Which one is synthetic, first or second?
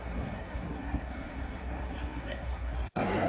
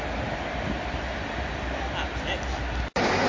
first